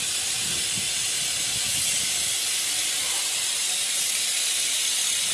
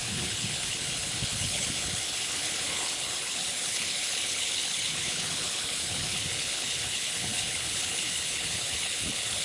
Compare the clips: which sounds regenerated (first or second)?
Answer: second